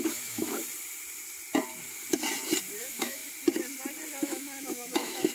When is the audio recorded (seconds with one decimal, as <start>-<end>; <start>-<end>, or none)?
0.6-2.8; 3.2-4.2